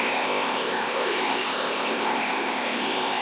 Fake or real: fake